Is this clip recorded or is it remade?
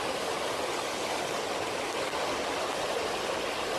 recorded